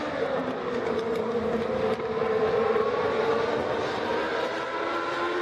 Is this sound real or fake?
real